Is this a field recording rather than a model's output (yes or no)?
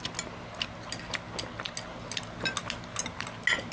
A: yes